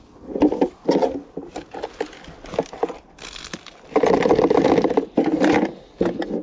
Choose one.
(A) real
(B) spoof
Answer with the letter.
A